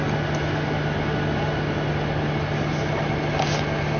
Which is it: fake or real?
real